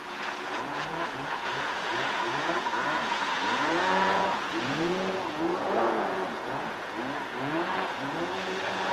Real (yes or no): no